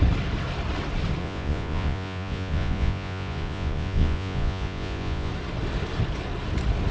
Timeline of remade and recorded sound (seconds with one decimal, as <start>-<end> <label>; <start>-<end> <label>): 0.0-1.2 recorded; 1.2-5.3 remade; 5.3-6.9 recorded

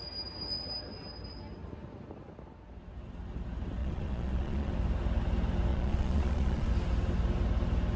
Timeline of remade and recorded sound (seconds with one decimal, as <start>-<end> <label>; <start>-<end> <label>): 0.0-3.8 recorded; 3.8-4.7 remade; 4.7-5.7 recorded; 5.7-6.7 remade; 6.7-8.0 recorded

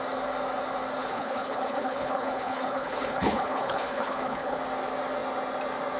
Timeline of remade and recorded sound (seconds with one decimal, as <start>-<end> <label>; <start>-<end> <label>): 0.0-1.0 recorded; 1.0-4.6 remade; 4.6-6.0 recorded

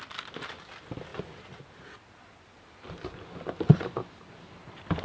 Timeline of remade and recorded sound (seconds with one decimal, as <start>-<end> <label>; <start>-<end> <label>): 0.0-1.1 remade; 1.1-4.1 recorded; 4.1-5.0 remade

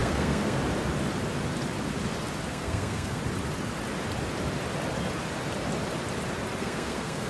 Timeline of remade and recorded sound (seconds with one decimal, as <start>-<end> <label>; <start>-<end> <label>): 0.0-0.6 remade; 0.6-2.5 recorded; 2.5-3.2 remade; 3.2-6.6 recorded; 6.6-7.3 remade

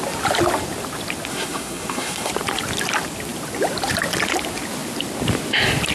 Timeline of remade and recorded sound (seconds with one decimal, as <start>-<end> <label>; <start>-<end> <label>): 0.0-1.3 recorded; 1.3-2.3 remade; 2.3-5.9 recorded

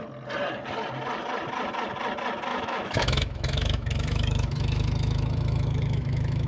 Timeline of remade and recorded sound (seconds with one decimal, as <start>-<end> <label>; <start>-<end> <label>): 0.0-2.5 recorded; 2.5-6.5 remade

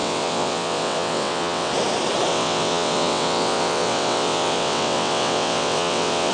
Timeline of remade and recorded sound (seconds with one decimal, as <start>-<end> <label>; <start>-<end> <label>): 0.0-1.7 remade; 1.7-2.3 recorded; 2.3-6.3 remade